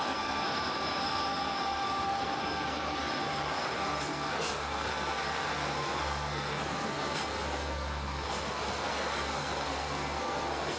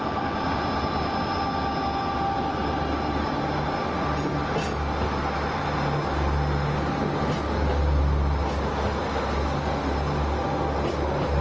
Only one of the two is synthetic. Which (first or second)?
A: first